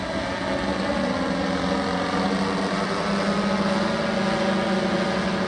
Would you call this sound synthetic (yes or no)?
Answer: no